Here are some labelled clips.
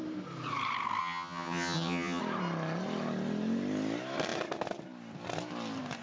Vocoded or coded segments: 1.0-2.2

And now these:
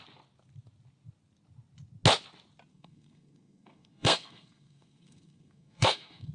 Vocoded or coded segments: 2.7-6.3

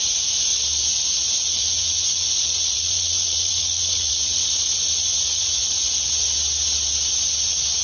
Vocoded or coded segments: 1.2-5.9

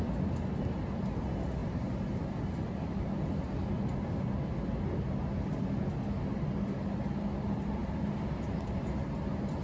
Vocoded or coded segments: none